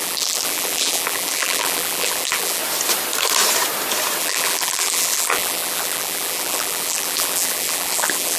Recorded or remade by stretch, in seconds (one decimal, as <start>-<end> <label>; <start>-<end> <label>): 0.0-2.6 remade; 2.6-4.2 recorded; 4.2-8.4 remade